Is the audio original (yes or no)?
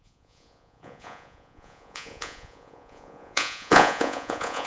no